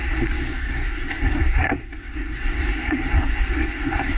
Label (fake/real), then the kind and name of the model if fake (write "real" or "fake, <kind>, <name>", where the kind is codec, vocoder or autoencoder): fake, codec, SNAC